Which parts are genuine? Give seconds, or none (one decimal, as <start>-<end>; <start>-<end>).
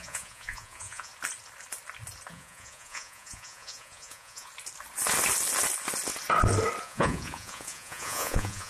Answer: 1.1-2.3; 4.5-6.8